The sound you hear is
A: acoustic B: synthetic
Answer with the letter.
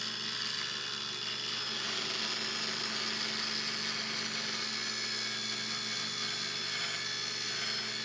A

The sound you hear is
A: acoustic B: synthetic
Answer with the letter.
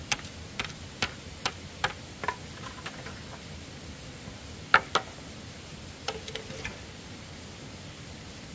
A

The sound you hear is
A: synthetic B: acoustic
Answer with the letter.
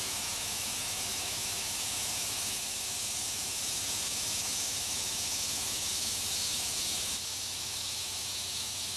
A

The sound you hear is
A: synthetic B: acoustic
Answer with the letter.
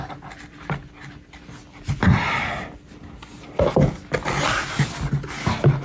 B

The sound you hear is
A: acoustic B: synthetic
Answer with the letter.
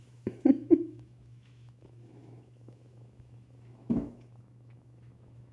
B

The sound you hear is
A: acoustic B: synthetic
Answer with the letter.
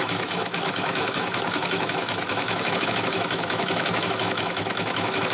B